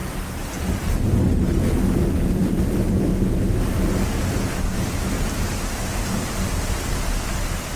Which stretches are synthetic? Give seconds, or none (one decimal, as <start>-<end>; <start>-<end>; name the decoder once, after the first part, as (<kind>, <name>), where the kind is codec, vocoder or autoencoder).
2.3-3.1 (vocoder, BigVGAN v2); 6.5-7.8